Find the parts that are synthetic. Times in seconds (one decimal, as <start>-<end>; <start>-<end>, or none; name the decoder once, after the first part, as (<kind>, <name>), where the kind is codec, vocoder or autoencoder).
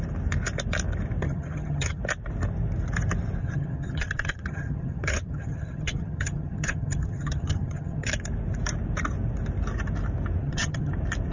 1.2-2.0 (vocoder, HiFi-GAN); 3.4-8.1; 10.4-10.9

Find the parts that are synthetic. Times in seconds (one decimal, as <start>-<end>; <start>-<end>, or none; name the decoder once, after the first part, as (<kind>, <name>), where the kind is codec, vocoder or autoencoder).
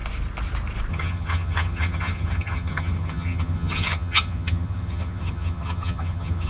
0.9-6.5 (vocoder, HiFi-GAN)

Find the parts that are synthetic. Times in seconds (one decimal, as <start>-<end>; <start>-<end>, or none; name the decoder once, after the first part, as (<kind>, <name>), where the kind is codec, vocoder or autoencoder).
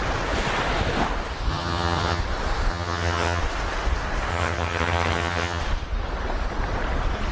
1.5-2.2 (vocoder, HiFi-GAN); 2.7-3.4; 4.3-5.6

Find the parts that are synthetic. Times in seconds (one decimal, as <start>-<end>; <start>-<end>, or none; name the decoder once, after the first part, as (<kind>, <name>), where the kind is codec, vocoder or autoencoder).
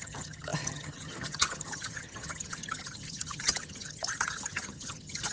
0.0-5.3 (vocoder, HiFi-GAN)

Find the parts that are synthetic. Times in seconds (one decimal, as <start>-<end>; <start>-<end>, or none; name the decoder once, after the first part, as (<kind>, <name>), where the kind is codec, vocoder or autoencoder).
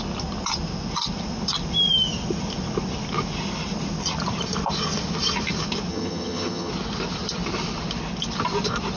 5.9-6.7 (vocoder, HiFi-GAN)